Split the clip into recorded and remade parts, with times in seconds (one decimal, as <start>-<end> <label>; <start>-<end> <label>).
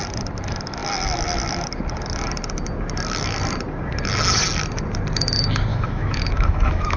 0.0-5.7 recorded; 5.7-7.0 remade